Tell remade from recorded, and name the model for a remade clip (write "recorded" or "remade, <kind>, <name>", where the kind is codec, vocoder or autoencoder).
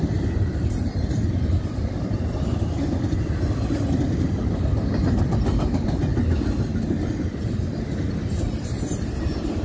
recorded